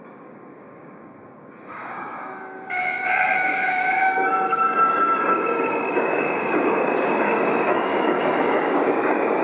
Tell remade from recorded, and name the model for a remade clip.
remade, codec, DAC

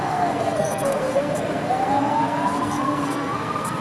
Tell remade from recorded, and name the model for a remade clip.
remade, codec, SNAC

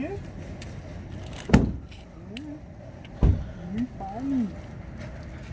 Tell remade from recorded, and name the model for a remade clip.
recorded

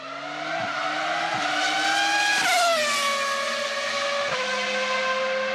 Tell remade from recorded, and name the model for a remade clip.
recorded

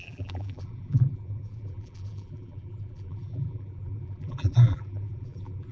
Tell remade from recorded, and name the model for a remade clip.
remade, vocoder, BigVGAN v2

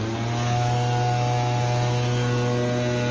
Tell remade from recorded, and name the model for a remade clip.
recorded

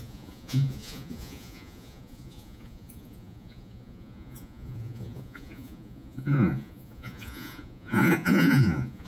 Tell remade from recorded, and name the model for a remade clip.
remade, vocoder, Vocos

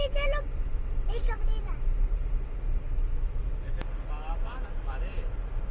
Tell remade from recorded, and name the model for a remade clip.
recorded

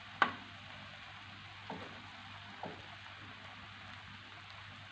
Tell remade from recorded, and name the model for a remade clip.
recorded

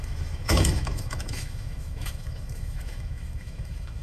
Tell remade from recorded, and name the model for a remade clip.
remade, autoencoder, DAC-VAE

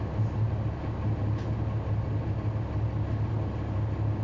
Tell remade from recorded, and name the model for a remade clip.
recorded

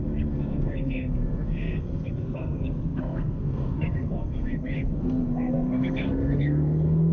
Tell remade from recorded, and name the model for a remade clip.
remade, codec, SNAC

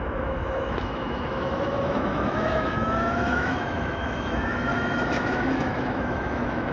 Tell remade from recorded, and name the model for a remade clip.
remade, autoencoder, DAC-VAE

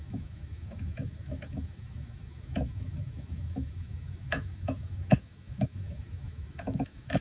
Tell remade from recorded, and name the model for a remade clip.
remade, autoencoder, DAC-VAE